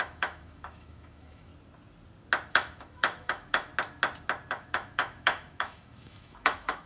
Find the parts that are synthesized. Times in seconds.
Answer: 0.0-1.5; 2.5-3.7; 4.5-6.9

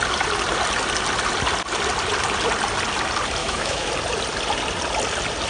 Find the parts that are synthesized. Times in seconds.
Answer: 3.4-3.9

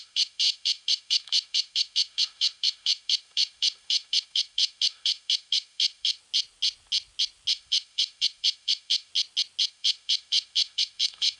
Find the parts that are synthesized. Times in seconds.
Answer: 0.0-6.2; 7.5-9.1; 9.7-11.4

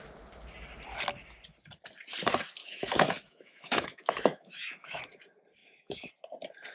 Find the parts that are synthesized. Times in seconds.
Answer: 2.6-5.0; 5.6-6.1

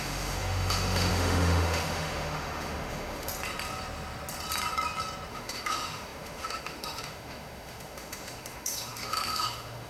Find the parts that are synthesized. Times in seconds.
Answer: 0.0-3.3; 5.3-9.9